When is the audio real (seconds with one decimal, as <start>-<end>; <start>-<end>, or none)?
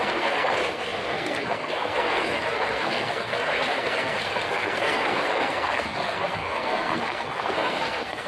none